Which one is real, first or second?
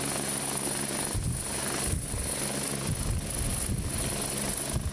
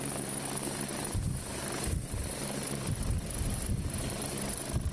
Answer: first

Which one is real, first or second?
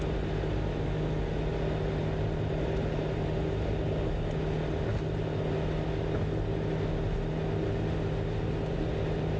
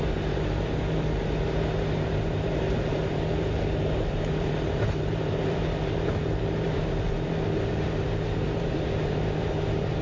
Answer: first